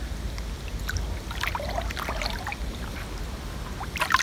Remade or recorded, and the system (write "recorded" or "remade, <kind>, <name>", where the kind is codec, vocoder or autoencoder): recorded